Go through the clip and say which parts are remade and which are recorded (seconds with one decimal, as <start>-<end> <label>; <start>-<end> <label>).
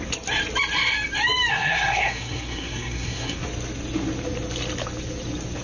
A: 0.0-1.5 recorded; 1.5-3.4 remade; 3.4-5.6 recorded